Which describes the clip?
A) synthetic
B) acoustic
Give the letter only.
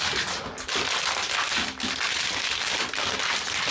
B